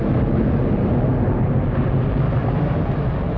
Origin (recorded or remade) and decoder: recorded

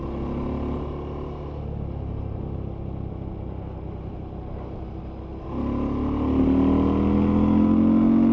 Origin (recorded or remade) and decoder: recorded